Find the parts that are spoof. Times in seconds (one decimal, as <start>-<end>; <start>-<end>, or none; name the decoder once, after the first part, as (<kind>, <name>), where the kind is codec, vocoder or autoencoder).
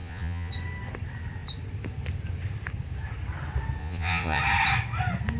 0.0-0.5 (vocoder, Vocos); 3.8-4.4